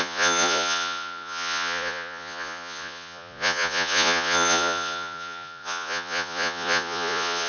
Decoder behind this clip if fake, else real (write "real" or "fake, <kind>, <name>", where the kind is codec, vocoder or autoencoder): fake, vocoder, Vocos